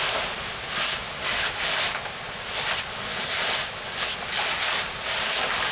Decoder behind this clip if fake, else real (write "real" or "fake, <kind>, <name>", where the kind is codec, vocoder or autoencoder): real